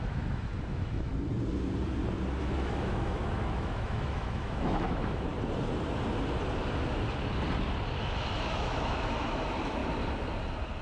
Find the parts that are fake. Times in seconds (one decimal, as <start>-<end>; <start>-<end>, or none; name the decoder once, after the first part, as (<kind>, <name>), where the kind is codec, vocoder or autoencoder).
0.0-1.1 (autoencoder, DAC-VAE); 2.4-5.3; 8.0-9.8